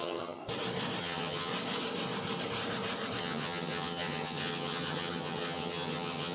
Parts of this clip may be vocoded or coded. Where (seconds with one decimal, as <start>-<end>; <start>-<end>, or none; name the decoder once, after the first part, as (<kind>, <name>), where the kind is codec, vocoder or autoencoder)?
0.0-0.4 (vocoder, HiFi-GAN); 1.0-1.5; 3.2-6.3